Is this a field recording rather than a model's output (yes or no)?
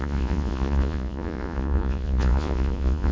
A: no